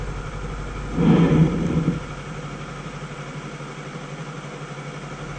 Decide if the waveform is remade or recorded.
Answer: recorded